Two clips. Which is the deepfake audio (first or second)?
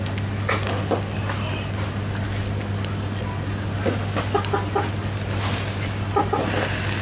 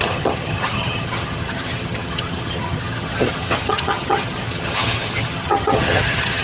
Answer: second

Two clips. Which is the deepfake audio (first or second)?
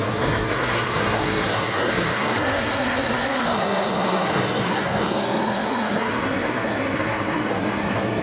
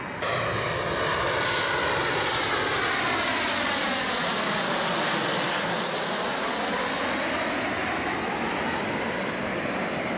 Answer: first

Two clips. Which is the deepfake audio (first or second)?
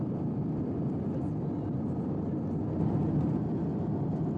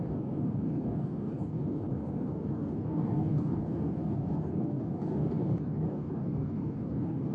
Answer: second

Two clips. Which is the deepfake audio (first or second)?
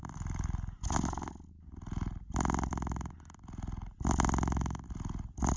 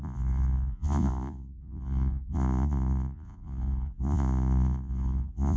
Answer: second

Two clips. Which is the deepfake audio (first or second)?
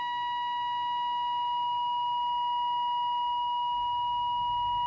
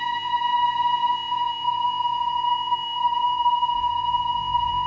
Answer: second